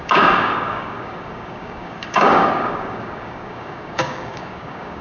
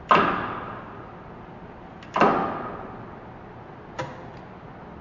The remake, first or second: first